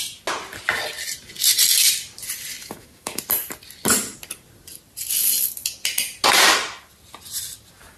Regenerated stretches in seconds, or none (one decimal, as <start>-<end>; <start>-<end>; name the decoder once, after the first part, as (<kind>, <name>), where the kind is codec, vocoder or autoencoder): 2.6-3.2 (autoencoder, DAC-VAE)